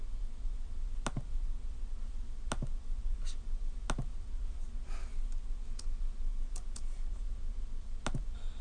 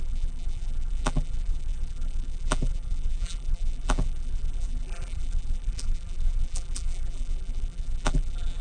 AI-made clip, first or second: second